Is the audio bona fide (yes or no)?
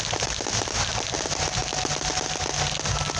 yes